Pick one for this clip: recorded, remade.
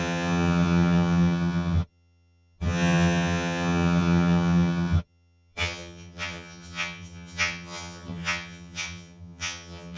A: remade